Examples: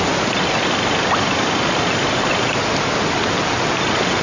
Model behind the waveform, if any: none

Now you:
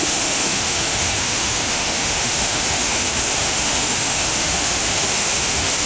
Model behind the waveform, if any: autoencoder, DAC-VAE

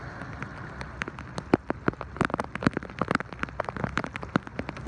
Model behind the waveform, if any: none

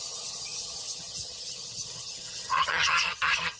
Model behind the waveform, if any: vocoder, HiFi-GAN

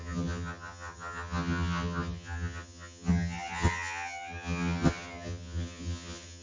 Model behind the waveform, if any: vocoder, HiFi-GAN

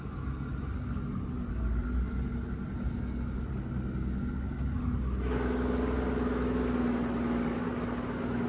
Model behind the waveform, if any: none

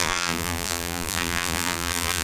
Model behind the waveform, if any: vocoder, BigVGAN v2